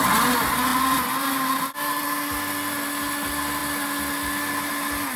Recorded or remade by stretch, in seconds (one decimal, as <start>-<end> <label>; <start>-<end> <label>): 0.0-5.2 recorded